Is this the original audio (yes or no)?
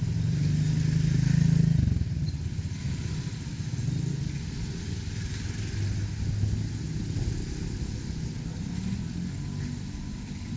yes